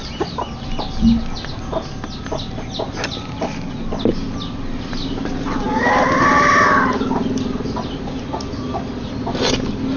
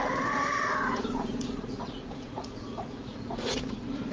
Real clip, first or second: first